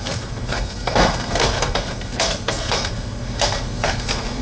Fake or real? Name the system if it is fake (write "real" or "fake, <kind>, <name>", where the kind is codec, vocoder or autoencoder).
fake, codec, SNAC